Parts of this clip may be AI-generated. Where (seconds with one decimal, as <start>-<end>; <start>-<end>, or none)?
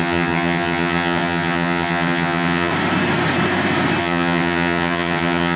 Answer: 0.0-2.7; 4.0-5.6